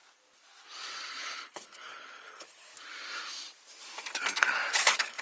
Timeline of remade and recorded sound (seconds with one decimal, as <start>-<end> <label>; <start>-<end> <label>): 0.0-1.1 recorded; 1.1-2.7 remade; 2.7-4.7 recorded; 4.7-5.2 remade